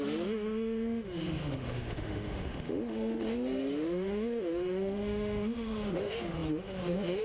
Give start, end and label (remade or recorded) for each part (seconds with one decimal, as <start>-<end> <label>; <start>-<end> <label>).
0.0-7.2 remade